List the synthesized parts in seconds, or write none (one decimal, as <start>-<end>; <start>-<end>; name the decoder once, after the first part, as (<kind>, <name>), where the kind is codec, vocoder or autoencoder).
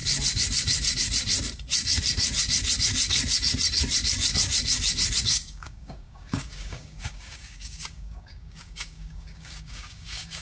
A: 5.2-10.4 (codec, DAC)